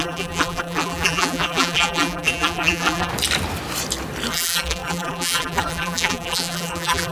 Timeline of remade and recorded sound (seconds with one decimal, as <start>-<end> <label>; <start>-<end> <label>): 0.0-3.1 remade; 3.1-4.3 recorded; 4.3-7.1 remade